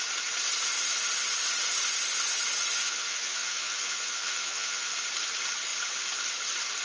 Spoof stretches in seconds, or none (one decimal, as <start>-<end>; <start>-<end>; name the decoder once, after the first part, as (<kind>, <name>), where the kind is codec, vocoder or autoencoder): 2.7-4.9 (vocoder, Vocos)

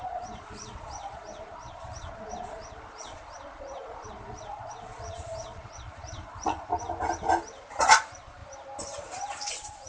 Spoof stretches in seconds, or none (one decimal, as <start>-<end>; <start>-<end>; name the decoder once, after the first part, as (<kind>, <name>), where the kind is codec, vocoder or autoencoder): 0.0-6.7 (vocoder, Vocos); 7.8-8.4; 9.5-9.9